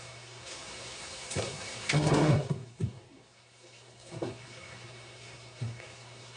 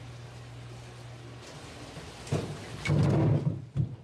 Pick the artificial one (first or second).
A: first